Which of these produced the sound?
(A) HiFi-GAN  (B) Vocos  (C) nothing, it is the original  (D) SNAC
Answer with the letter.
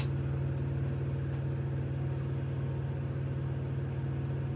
C